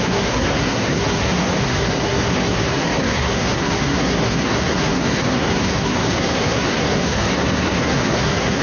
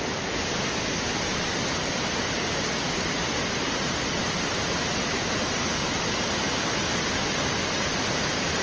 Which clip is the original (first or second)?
second